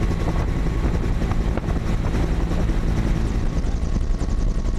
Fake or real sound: real